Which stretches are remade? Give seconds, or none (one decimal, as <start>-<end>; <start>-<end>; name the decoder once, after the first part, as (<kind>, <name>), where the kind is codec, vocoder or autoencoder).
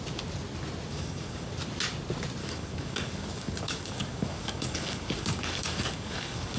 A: 0.9-1.5 (codec, DAC); 2.4-6.6